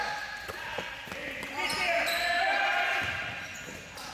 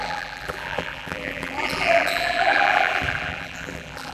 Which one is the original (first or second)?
first